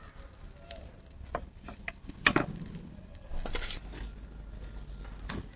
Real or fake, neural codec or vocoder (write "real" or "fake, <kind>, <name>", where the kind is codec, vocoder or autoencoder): real